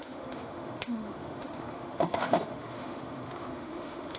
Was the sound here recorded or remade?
remade